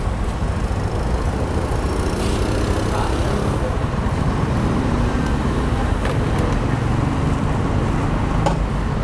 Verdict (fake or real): real